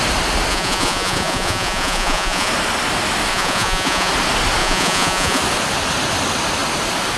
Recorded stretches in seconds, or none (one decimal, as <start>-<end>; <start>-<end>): 0.0-0.5; 2.5-3.3; 4.1-4.6; 5.4-7.2